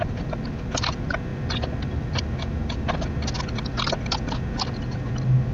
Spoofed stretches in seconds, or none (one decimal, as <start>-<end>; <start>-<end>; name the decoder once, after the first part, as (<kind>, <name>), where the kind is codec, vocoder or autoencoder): none